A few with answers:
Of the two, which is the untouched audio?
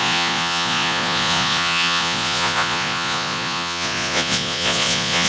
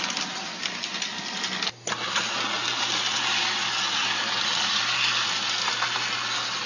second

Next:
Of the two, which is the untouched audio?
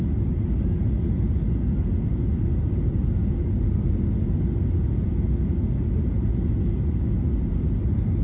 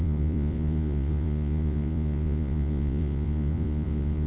first